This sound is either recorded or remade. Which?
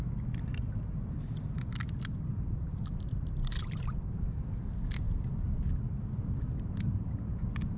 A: recorded